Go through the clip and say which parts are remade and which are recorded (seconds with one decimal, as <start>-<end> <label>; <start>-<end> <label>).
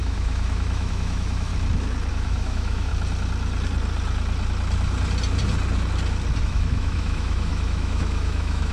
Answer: 0.0-1.5 remade; 1.5-2.1 recorded; 2.1-2.9 remade; 2.9-6.4 recorded; 6.4-8.7 remade